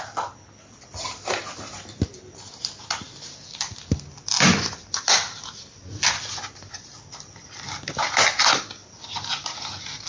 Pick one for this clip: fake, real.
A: real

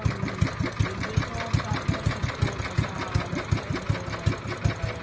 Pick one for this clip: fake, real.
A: real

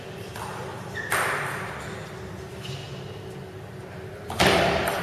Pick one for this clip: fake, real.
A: real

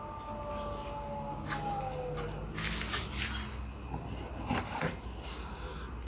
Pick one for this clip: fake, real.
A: real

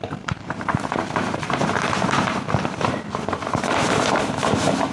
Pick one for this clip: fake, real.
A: fake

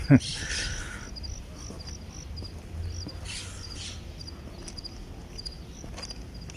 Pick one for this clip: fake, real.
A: real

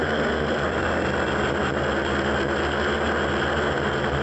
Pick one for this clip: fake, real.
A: real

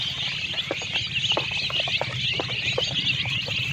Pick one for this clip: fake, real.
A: real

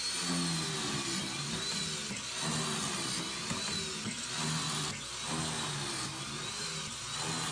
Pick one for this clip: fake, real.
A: real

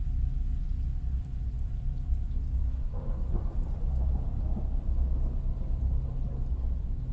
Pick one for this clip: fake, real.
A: real